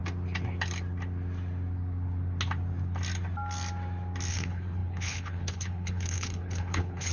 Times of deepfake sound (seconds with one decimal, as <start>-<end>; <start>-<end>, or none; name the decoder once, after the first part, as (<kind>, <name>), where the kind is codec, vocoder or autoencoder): 4.3-7.1 (codec, HILCodec)